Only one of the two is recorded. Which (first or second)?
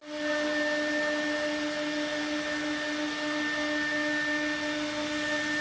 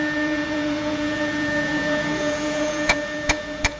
first